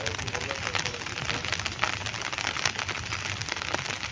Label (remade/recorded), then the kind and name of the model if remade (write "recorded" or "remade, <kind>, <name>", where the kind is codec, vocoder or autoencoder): recorded